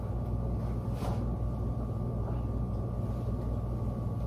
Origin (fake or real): real